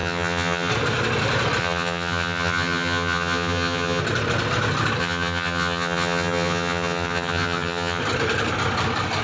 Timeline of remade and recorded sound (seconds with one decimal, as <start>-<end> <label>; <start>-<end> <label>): 0.0-0.7 remade; 0.7-1.6 recorded; 1.6-4.0 remade; 4.0-5.0 recorded; 5.0-8.0 remade; 8.0-9.2 recorded